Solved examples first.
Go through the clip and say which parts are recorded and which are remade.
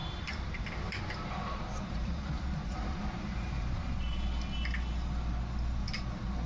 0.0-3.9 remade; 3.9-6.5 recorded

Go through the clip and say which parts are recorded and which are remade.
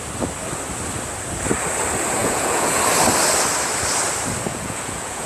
0.0-2.2 recorded; 2.2-2.8 remade; 2.8-4.5 recorded; 4.5-5.3 remade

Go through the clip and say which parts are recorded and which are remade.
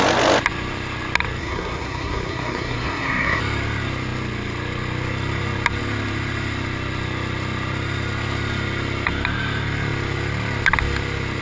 0.0-1.4 recorded; 1.4-3.4 remade; 3.4-11.4 recorded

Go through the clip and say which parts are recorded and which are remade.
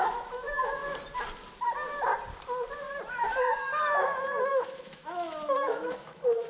0.0-0.8 remade; 0.8-3.1 recorded; 3.1-6.5 remade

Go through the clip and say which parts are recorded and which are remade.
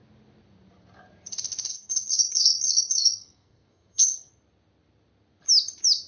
0.0-1.7 recorded; 1.7-4.3 remade; 4.3-6.1 recorded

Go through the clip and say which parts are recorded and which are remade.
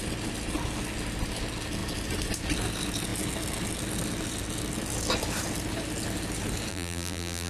0.0-6.7 recorded; 6.7-7.5 remade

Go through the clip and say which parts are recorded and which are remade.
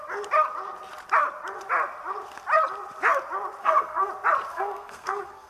0.0-3.6 recorded; 3.6-4.1 remade; 4.1-4.5 recorded; 4.5-5.5 remade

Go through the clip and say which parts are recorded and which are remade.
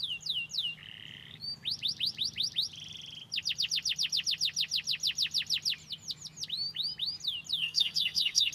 0.0-7.6 recorded; 7.6-8.5 remade